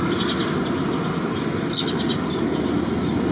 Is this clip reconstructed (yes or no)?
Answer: no